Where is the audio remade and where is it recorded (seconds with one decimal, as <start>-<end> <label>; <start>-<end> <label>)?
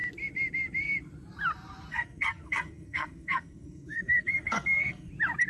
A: 0.0-1.9 recorded; 1.9-5.1 remade; 5.1-5.5 recorded